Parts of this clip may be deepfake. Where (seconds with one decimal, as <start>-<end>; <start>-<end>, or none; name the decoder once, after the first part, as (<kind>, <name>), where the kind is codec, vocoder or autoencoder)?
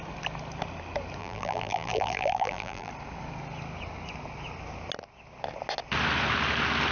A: 1.2-2.9 (vocoder, BigVGAN v2)